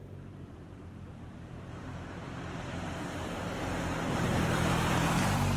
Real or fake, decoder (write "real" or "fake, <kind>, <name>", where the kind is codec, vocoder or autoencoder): fake, vocoder, BigVGAN v2